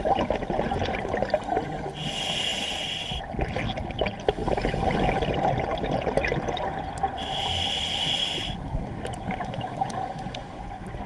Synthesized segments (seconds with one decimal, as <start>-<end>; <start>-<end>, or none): none